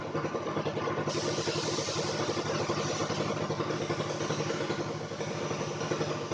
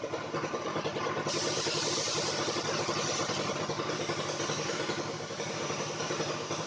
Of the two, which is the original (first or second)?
first